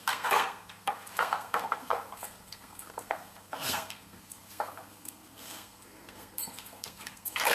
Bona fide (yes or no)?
no